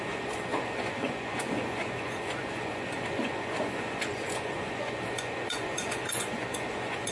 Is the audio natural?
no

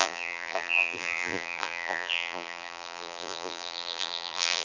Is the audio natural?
no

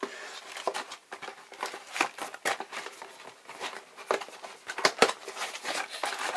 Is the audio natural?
yes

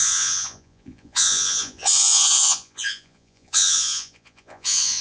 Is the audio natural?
no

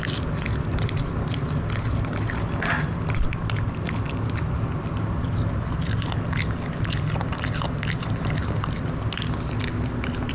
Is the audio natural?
yes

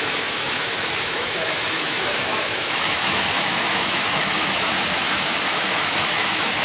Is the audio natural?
no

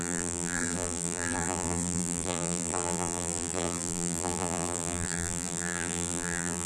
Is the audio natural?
no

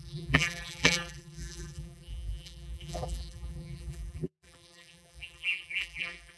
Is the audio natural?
no